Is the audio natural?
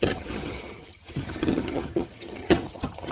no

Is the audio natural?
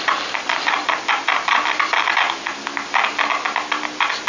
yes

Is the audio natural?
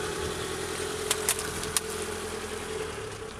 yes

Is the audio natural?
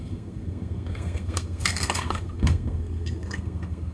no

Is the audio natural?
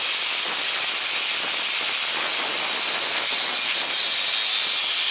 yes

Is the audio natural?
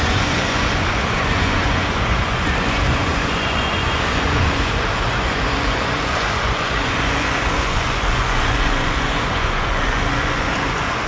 no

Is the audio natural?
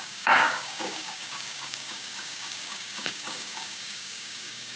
no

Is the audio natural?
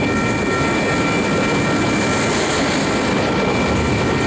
yes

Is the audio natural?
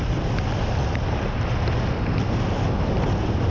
yes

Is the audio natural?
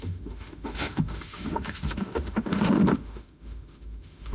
no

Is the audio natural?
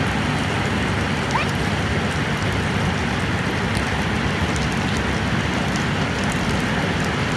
yes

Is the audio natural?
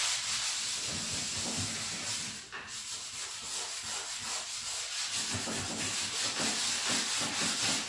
yes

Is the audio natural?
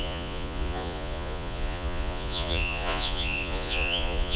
no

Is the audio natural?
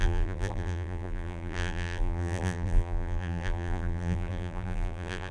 no